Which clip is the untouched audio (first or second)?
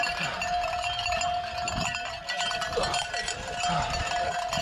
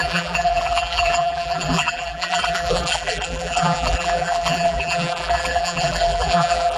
first